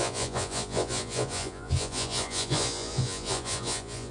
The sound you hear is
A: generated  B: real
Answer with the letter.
A